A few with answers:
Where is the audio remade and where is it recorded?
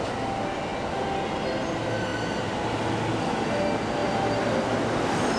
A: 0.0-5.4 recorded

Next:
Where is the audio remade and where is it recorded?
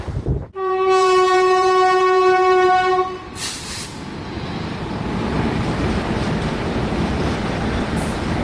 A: 0.0-4.1 remade; 4.1-6.5 recorded; 6.5-8.4 remade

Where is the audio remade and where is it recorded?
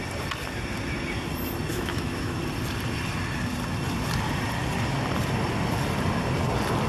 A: 0.0-1.7 recorded; 1.7-2.4 remade; 2.4-6.9 recorded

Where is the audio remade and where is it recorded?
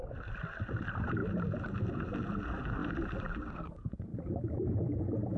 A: 0.0-2.8 recorded; 2.8-3.6 remade; 3.6-4.1 recorded; 4.1-5.0 remade; 5.0-5.4 recorded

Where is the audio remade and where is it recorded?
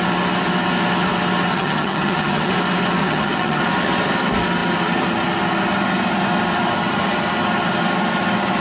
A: 0.0-1.5 recorded; 1.5-2.5 remade; 2.5-3.0 recorded; 3.0-3.6 remade; 3.6-8.6 recorded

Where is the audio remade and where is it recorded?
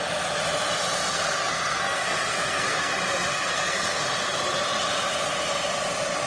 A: 0.0-1.1 recorded; 1.1-2.9 remade; 2.9-3.3 recorded; 3.3-4.0 remade; 4.0-6.3 recorded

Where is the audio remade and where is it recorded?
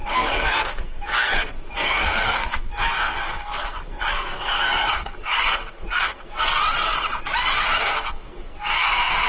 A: 0.0-6.6 remade; 6.6-7.8 recorded; 7.8-9.3 remade